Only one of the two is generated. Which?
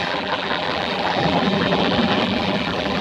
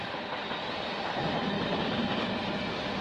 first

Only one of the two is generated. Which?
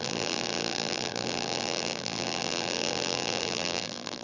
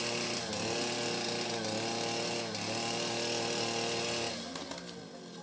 first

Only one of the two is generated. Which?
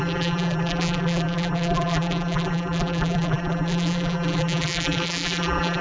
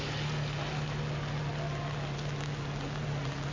first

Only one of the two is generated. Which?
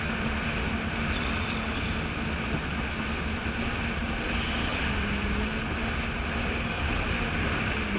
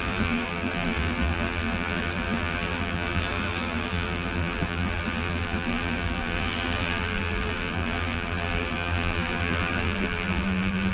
second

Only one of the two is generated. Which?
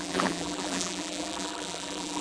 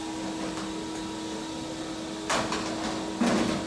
first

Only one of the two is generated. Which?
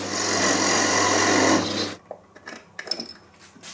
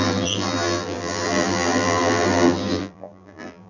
second